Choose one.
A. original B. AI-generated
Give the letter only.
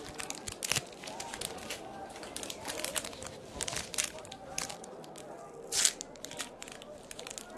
A